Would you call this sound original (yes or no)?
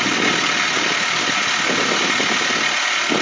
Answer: yes